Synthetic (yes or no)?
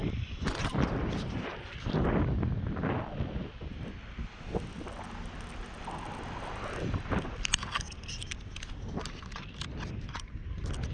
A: no